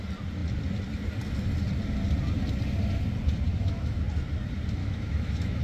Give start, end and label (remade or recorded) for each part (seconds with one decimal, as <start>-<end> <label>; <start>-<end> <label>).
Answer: 0.0-3.5 recorded; 3.5-4.0 remade; 4.0-4.8 recorded; 4.8-5.6 remade